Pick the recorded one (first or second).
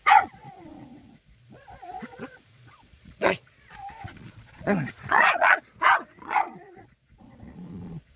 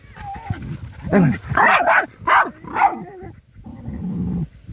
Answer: second